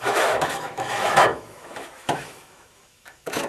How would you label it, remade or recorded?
remade